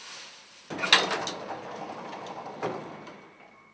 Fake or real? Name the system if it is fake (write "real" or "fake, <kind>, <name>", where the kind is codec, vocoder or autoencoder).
real